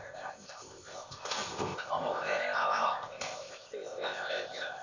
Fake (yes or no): yes